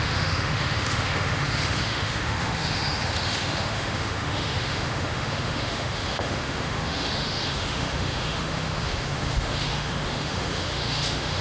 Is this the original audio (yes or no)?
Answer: no